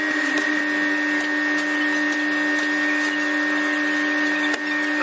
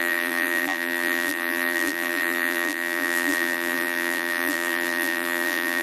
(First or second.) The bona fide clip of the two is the first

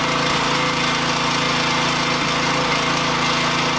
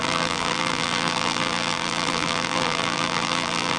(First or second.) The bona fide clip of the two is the first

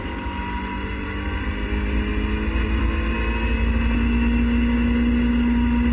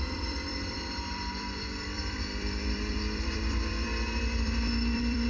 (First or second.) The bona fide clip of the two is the first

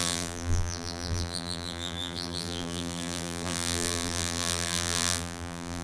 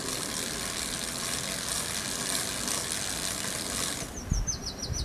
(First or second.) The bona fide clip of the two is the second